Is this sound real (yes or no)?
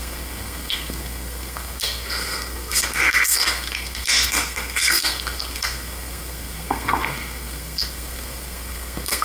no